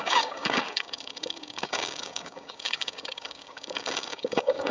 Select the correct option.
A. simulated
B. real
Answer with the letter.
A